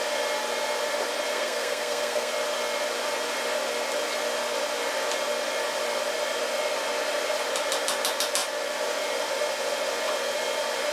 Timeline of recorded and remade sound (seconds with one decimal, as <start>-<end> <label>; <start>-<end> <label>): 0.0-1.3 recorded; 1.3-2.3 remade; 2.3-10.9 recorded